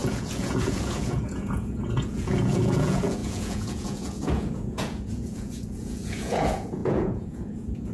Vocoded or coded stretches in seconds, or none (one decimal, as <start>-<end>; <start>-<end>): 0.0-7.9

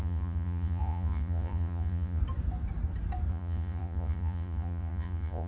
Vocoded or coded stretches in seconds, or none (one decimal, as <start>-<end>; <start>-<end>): 0.0-2.2; 3.3-5.5

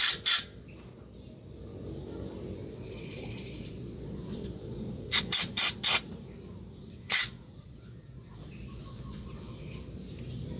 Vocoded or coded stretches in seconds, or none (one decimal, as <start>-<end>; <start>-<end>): 2.6-5.7; 6.8-9.7

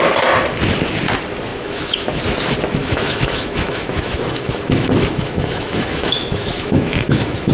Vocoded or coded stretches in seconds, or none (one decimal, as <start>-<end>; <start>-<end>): 1.5-2.2; 2.8-7.5

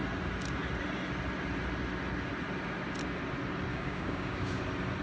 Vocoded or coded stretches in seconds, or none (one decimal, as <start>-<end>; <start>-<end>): 3.7-4.6